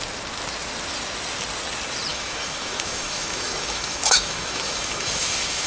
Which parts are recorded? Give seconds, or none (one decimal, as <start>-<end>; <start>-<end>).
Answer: 0.0-2.1